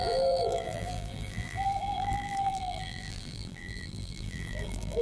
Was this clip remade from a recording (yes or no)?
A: yes